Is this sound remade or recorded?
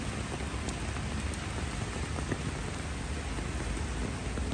recorded